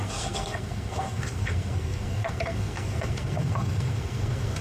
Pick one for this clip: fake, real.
fake